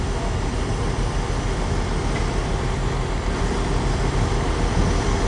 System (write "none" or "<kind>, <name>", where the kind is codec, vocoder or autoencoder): none